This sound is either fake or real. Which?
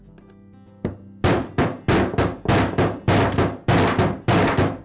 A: real